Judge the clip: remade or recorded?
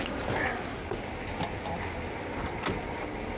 recorded